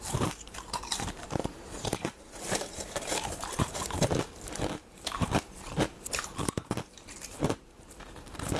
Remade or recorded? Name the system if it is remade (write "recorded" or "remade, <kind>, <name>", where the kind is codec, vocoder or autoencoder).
remade, vocoder, BigVGAN v2